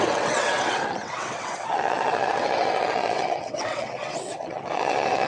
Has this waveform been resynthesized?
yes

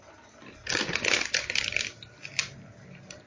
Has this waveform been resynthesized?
no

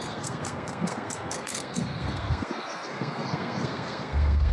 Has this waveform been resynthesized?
yes